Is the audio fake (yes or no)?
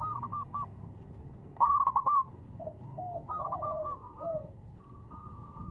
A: yes